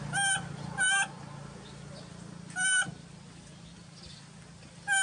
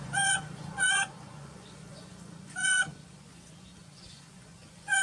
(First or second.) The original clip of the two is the first